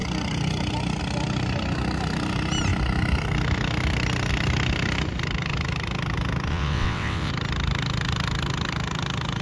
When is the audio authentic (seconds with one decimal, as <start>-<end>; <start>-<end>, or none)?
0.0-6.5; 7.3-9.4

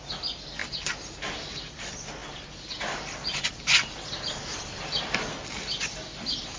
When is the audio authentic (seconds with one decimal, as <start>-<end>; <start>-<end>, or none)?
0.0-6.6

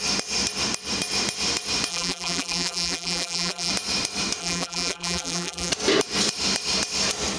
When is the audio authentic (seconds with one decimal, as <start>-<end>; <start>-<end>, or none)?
0.0-1.9; 3.7-4.4; 5.7-7.4

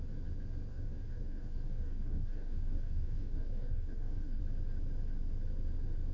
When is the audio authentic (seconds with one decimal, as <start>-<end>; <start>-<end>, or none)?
0.0-0.7; 4.4-6.1

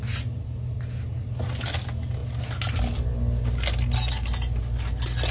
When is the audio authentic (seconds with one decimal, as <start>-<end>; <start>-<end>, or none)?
0.0-5.3